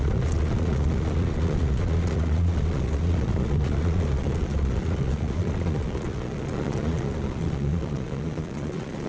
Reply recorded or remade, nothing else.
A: remade